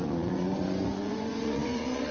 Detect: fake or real fake